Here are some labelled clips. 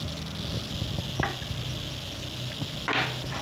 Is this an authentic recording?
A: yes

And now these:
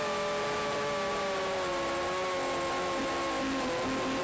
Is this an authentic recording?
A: yes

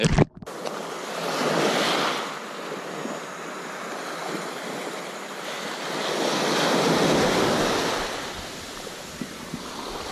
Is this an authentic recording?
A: yes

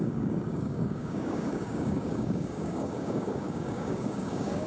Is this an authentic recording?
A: no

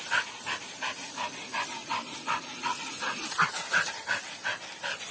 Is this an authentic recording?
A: yes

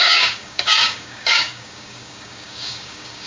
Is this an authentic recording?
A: no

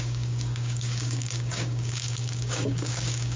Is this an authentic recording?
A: no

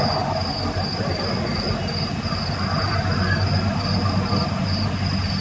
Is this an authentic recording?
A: yes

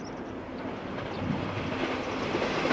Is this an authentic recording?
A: yes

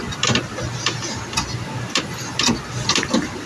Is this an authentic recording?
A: yes